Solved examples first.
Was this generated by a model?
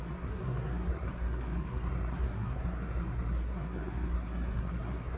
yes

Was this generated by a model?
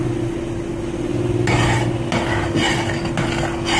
no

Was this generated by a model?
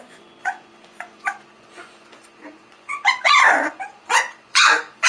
yes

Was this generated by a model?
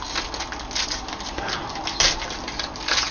no